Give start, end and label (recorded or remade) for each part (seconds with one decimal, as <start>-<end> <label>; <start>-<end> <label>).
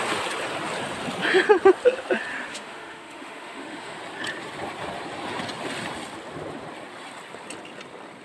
0.0-2.5 recorded; 2.5-4.0 remade; 4.0-8.2 recorded